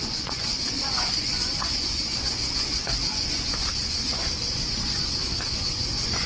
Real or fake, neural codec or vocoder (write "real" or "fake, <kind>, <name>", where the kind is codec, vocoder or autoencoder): fake, vocoder, Vocos